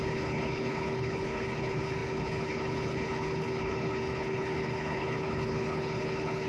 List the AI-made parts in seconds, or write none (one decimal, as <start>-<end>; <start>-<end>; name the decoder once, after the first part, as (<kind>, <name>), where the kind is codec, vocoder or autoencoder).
0.0-6.5 (codec, HILCodec)